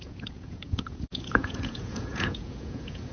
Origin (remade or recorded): remade